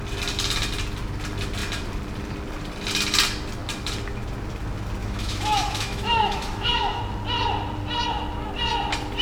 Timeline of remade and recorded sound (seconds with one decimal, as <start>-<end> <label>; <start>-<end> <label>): 0.0-5.0 recorded; 5.0-7.0 remade; 7.0-9.2 recorded